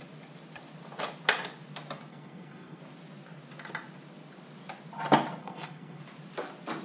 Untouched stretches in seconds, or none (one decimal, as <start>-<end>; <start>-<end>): 0.0-2.1; 2.8-5.4; 6.0-6.8